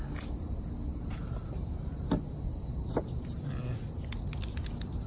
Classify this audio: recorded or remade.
recorded